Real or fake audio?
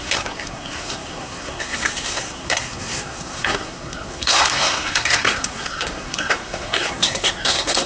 fake